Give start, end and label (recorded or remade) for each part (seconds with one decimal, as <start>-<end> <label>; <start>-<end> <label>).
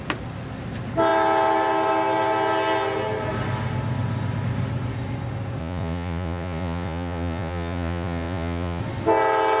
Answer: 0.0-5.6 recorded; 5.6-8.8 remade; 8.8-9.6 recorded